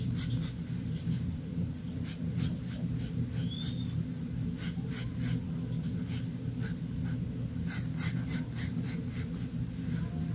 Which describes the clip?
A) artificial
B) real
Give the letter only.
B